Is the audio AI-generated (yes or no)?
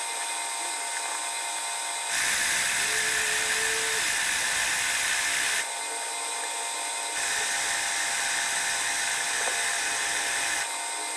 no